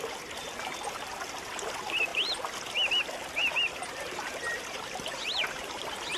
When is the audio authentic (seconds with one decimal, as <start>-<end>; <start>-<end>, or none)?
0.0-3.4; 5.8-6.2